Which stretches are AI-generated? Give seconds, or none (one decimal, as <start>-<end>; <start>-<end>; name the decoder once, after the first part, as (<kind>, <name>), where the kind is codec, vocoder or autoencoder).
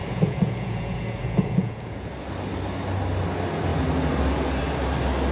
0.0-2.1 (vocoder, Vocos)